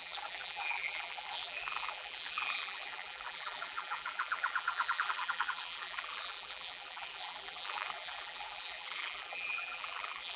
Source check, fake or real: fake